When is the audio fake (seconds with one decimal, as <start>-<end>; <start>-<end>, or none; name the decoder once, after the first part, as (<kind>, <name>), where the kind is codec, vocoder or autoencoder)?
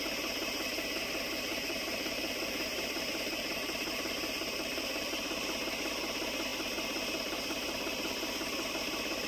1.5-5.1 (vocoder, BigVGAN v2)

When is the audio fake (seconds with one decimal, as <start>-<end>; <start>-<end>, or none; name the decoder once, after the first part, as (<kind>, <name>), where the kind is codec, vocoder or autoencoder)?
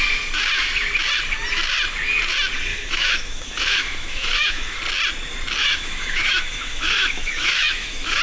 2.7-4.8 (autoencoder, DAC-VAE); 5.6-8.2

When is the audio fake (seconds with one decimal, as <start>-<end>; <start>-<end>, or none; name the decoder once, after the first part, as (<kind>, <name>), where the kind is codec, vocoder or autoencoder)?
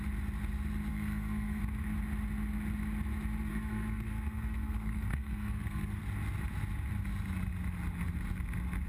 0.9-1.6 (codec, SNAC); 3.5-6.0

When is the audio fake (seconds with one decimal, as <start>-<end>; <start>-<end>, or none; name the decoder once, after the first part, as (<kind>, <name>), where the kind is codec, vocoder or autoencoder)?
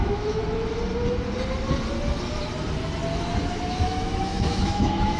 0.0-0.4 (autoencoder, DAC-VAE); 3.5-5.2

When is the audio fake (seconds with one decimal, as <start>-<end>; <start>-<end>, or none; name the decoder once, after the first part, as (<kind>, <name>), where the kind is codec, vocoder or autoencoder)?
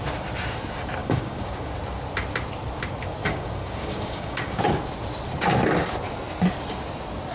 1.0-1.7 (codec, DAC); 3.2-4.7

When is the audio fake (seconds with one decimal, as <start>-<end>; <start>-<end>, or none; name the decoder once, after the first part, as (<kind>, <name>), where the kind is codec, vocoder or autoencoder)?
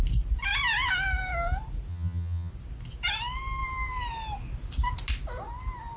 1.9-2.5 (vocoder, HiFi-GAN)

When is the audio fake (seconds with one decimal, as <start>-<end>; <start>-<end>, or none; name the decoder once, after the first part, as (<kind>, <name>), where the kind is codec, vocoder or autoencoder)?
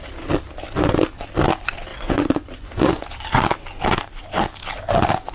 1.9-3.0 (vocoder, Vocos)